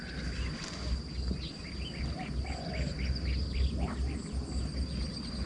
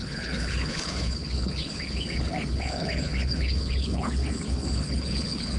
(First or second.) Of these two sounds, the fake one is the second